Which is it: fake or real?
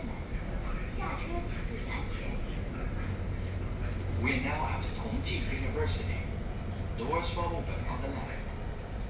real